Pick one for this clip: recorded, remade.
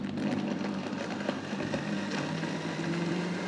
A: remade